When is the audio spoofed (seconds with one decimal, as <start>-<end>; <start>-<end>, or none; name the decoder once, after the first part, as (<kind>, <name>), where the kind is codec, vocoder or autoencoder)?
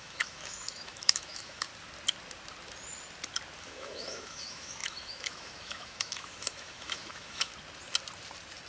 0.0-1.7 (autoencoder, DAC-VAE); 3.6-7.5